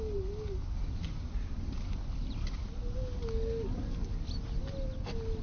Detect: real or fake real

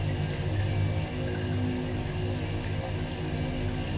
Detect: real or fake real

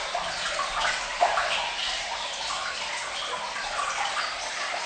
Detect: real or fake real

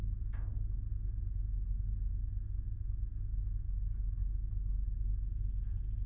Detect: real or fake real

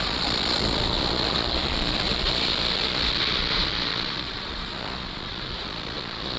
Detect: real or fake fake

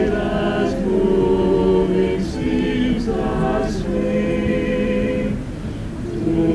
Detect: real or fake real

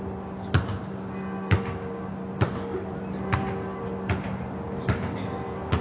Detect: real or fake real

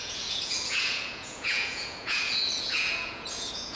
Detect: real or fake fake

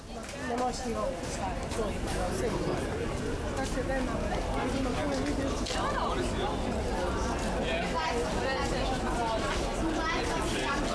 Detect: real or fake real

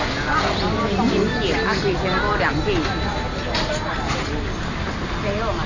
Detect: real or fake real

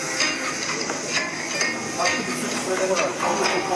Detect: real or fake real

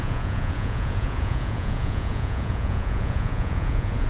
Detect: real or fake fake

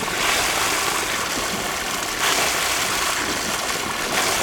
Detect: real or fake real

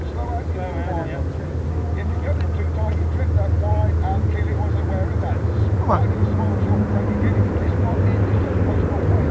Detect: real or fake real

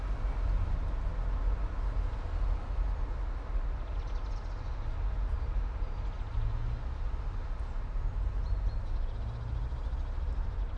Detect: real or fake real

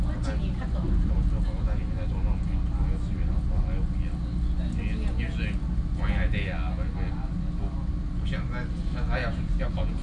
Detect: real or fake real